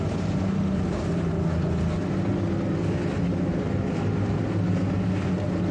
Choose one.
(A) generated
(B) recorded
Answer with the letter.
B